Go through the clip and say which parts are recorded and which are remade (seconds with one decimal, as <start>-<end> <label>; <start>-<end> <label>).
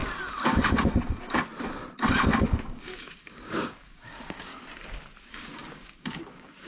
0.0-2.6 recorded; 2.6-4.5 remade; 4.5-5.3 recorded; 5.3-6.7 remade